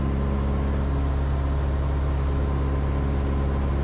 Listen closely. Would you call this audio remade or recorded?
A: recorded